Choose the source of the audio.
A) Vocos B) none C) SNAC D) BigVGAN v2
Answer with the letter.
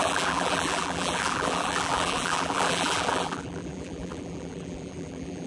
D